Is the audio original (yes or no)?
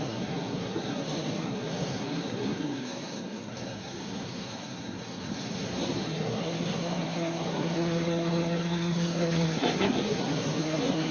no